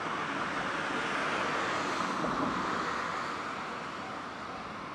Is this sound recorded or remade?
recorded